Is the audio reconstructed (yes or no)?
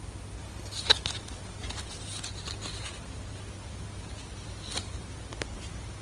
no